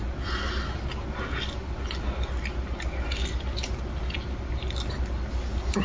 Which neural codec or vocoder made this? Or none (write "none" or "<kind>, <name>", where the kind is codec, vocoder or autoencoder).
none